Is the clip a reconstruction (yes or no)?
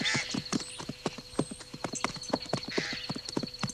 no